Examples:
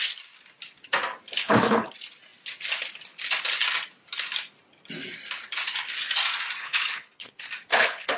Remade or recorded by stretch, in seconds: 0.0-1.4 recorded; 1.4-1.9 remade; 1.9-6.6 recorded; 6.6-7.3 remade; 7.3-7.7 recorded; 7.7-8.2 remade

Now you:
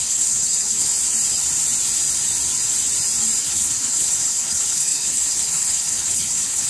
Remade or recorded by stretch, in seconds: 0.0-0.9 remade; 0.9-3.4 recorded; 3.4-6.7 remade

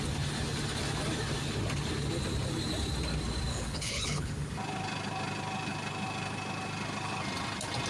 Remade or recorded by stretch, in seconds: 0.0-3.5 recorded; 3.5-4.3 remade; 4.3-7.9 recorded

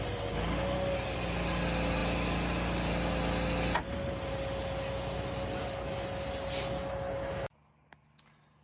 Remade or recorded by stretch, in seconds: 0.0-8.6 recorded

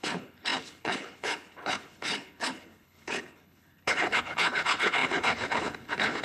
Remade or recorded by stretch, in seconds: 0.0-6.2 remade

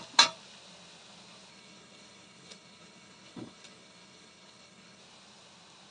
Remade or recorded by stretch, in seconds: 0.0-1.5 recorded; 1.5-5.0 remade; 5.0-5.9 recorded

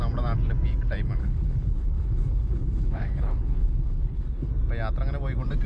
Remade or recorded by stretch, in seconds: 0.0-1.2 recorded; 1.2-4.5 remade; 4.5-5.7 recorded

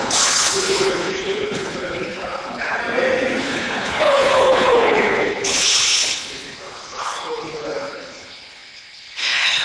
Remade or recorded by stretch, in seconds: 0.0-2.8 remade; 2.8-3.4 recorded; 3.4-9.6 remade